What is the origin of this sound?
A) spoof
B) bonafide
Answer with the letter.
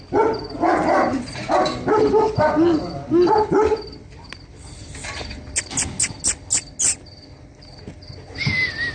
B